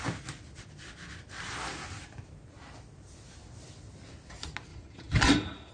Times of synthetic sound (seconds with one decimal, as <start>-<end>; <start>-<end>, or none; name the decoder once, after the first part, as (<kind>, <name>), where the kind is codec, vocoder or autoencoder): 4.7-5.7 (vocoder, Vocos)